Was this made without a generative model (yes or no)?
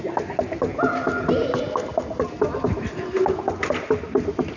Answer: yes